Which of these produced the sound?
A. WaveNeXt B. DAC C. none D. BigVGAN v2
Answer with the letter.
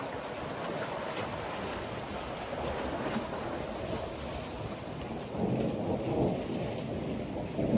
C